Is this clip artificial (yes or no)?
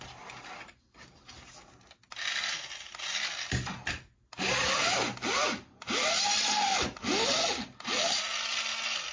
no